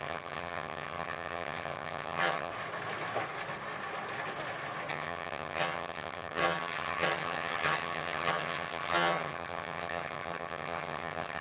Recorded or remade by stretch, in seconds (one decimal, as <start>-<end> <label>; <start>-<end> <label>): 0.0-2.5 remade; 2.5-4.9 recorded; 4.9-11.4 remade